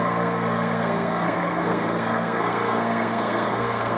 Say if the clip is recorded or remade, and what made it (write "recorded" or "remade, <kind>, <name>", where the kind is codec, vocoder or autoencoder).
remade, codec, SNAC